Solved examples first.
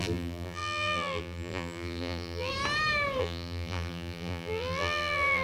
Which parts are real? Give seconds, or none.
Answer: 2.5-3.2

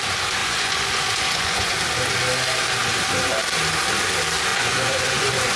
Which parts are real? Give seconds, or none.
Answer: 0.0-0.4; 1.7-4.5

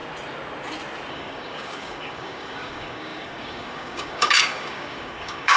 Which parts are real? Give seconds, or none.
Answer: 0.0-1.1

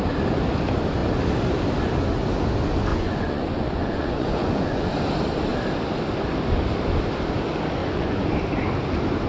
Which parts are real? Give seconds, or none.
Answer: 0.0-2.9; 4.9-7.8; 8.3-9.3

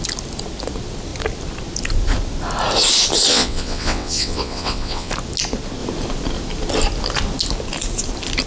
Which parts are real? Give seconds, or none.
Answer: 0.0-3.3; 5.1-8.5